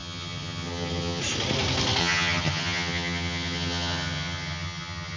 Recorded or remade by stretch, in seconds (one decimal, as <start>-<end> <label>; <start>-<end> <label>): 0.0-1.2 remade; 1.2-2.0 recorded; 2.0-5.2 remade